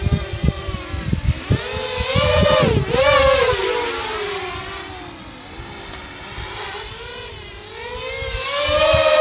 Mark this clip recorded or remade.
recorded